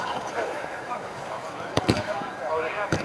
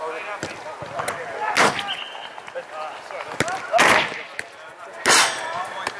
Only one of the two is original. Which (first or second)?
second